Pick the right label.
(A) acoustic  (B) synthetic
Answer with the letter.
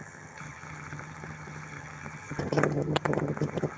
B